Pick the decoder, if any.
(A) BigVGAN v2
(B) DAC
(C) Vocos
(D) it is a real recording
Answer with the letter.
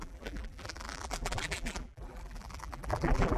A